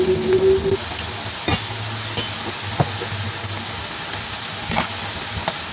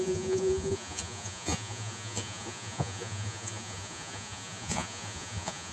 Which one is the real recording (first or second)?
first